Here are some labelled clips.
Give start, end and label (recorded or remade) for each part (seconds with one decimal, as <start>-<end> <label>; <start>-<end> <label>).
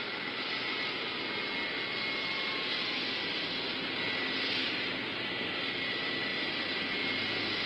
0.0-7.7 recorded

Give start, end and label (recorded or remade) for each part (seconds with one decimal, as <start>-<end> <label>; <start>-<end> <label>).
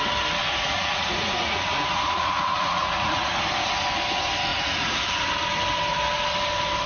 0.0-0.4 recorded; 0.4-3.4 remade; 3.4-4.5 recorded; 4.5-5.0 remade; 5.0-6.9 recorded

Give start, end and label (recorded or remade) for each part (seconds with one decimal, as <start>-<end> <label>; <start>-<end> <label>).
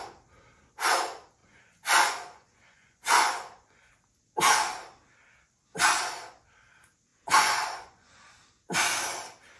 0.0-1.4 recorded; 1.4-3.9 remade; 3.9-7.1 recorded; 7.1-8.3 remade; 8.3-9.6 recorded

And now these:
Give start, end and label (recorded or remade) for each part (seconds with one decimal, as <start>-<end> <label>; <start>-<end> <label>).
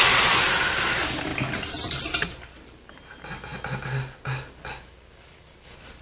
0.0-6.0 recorded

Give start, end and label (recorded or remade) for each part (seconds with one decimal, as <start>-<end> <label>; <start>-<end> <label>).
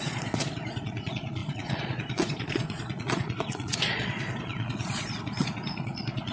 0.0-6.3 remade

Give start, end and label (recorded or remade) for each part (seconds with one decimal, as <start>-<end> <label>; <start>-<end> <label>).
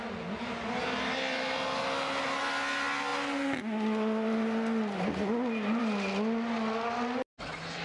0.0-7.8 recorded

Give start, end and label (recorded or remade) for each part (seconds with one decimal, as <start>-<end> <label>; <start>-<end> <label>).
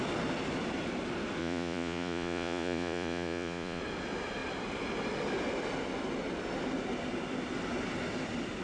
0.0-1.4 recorded; 1.4-3.8 remade; 3.8-8.6 recorded